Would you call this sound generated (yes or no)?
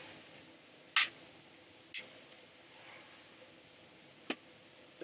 no